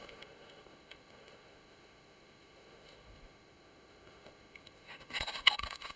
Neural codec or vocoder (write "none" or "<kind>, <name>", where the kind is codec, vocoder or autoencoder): autoencoder, DAC-VAE